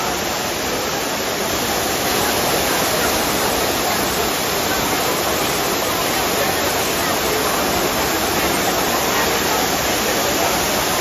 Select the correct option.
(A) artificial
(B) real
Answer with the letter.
B